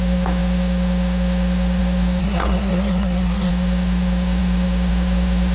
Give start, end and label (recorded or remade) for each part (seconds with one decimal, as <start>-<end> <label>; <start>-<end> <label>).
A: 0.0-2.2 recorded; 2.2-3.5 remade; 3.5-5.5 recorded